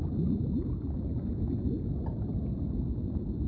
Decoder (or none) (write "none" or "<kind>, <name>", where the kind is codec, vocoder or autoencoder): vocoder, BigVGAN v2